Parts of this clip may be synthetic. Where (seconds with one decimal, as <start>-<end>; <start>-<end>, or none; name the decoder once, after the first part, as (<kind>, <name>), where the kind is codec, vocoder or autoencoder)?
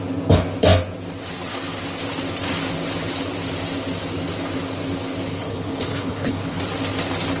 5.3-6.6 (codec, HILCodec)